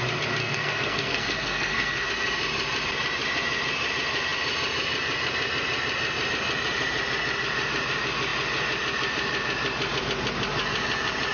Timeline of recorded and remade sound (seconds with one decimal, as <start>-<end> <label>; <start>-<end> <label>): 0.0-0.4 recorded; 0.4-2.1 remade; 2.1-11.3 recorded